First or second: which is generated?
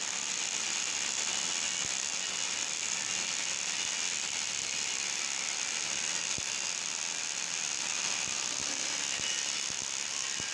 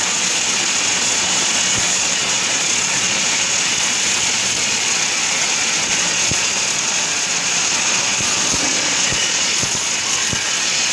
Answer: second